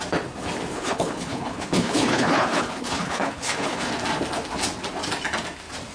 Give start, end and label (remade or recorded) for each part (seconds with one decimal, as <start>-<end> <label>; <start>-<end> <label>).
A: 0.0-0.7 recorded; 0.7-3.9 remade; 3.9-5.9 recorded